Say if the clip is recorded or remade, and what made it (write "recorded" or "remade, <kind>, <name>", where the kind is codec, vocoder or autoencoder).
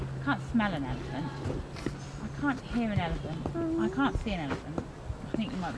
recorded